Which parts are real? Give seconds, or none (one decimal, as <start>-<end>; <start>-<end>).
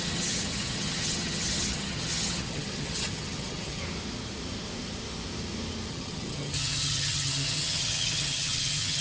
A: 3.8-5.9